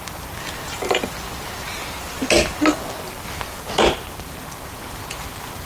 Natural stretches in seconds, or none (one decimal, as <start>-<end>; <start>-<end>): 0.0-5.7